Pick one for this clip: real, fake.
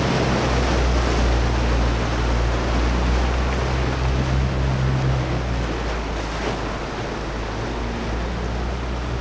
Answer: real